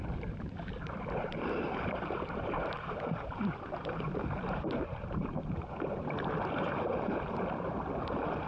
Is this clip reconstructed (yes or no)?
yes